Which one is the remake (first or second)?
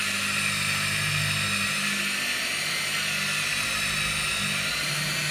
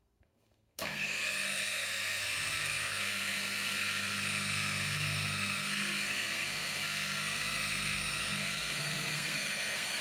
second